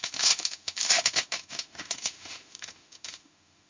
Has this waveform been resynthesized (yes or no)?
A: yes